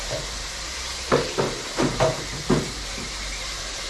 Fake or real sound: fake